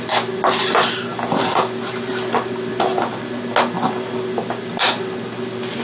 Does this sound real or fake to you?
real